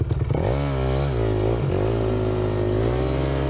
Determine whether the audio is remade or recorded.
recorded